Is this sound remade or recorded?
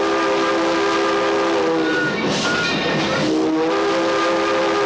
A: recorded